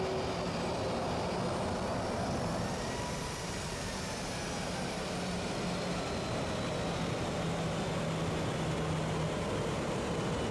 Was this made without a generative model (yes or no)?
yes